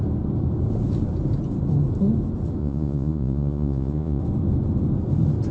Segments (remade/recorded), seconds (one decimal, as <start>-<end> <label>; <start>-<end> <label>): 0.0-2.6 recorded; 2.6-4.2 remade; 4.2-5.5 recorded